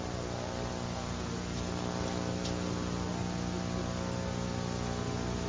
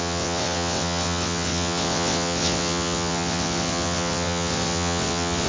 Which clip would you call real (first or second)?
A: first